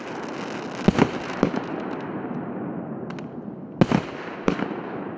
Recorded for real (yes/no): yes